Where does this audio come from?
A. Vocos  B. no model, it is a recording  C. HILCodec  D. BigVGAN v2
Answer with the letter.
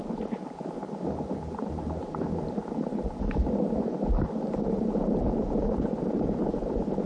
D